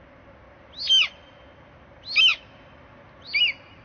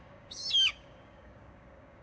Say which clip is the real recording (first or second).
first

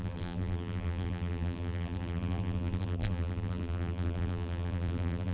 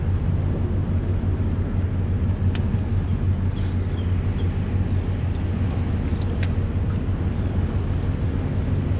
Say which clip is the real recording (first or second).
second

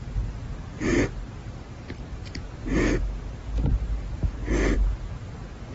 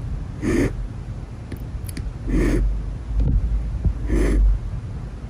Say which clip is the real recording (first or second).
second